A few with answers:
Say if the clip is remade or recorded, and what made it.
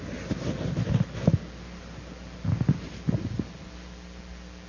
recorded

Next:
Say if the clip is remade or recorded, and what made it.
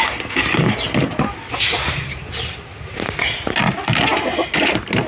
recorded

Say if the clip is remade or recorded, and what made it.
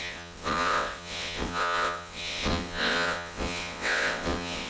remade, vocoder, WaveNeXt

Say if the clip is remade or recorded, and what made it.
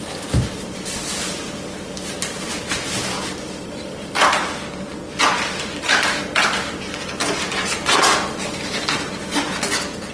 recorded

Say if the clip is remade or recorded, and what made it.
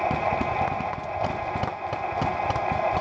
recorded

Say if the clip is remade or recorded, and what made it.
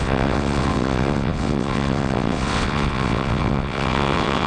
remade, vocoder, WaveNeXt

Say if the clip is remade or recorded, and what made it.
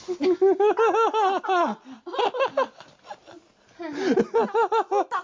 recorded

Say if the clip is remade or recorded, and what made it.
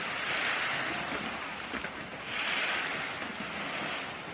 recorded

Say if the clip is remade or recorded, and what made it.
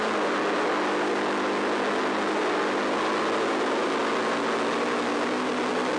recorded